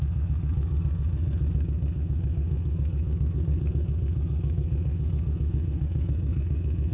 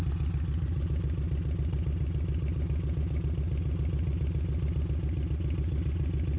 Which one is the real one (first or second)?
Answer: second